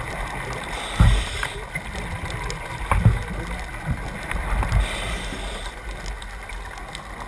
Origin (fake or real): real